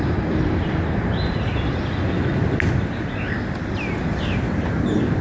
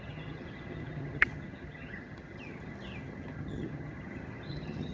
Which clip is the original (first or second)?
first